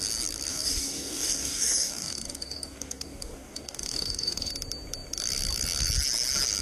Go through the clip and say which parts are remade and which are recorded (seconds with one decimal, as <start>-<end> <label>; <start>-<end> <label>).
0.0-0.5 recorded; 0.5-4.5 remade; 4.5-6.6 recorded